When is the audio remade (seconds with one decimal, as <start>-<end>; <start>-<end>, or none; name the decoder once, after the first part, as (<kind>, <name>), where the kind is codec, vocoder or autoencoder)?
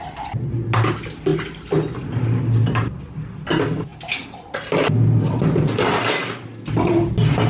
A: none